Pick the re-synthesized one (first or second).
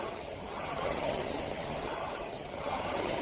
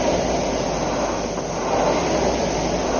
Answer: first